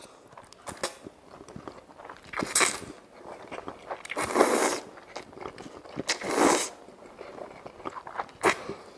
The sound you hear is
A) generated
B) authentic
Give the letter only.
B